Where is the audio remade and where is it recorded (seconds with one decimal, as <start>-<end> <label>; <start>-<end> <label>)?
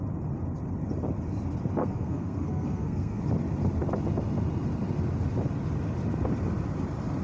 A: 0.0-1.8 recorded; 1.8-3.2 remade; 3.2-7.2 recorded